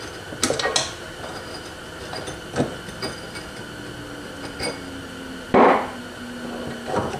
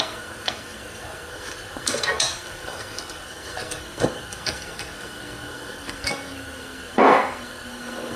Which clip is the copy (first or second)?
second